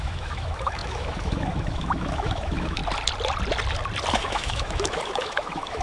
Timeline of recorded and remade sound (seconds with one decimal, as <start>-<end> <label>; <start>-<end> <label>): 0.0-2.8 remade; 2.8-4.1 recorded; 4.1-5.8 remade